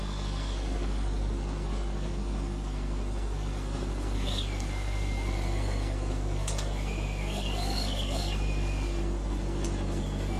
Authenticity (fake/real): fake